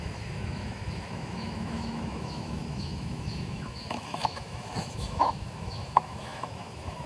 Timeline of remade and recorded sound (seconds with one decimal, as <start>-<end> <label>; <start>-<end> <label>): 0.0-7.1 remade